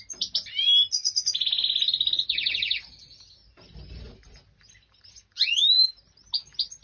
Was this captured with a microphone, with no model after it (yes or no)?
yes